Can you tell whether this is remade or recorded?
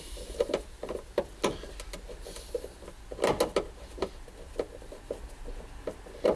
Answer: recorded